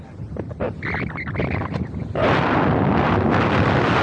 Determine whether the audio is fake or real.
real